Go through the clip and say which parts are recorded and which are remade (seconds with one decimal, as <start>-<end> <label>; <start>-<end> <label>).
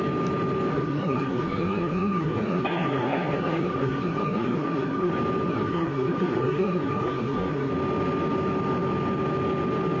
0.0-0.7 recorded; 0.7-5.1 remade; 5.1-5.5 recorded; 5.5-7.7 remade; 7.7-10.0 recorded